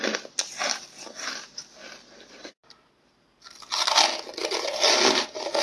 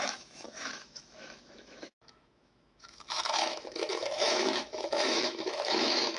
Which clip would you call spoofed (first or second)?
second